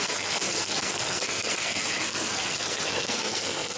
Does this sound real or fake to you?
fake